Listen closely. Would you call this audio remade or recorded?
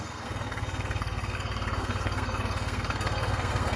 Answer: remade